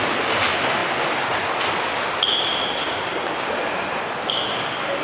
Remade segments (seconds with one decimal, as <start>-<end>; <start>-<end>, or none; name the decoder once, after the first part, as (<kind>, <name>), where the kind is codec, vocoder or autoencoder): none